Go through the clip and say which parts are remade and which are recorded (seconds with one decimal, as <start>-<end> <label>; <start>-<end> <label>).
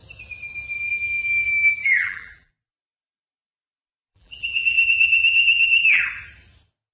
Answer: 0.0-1.8 recorded; 1.8-2.5 remade; 2.5-4.1 recorded; 4.1-6.0 remade; 6.0-6.9 recorded